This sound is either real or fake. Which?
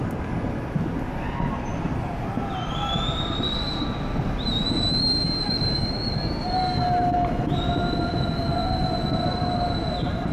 real